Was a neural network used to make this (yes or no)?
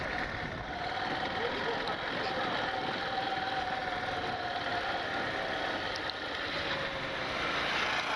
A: no